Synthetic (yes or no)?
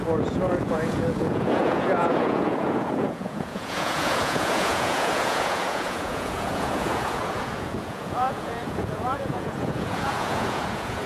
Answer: yes